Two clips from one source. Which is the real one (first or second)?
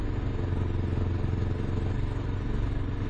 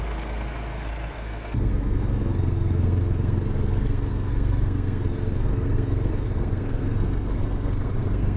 first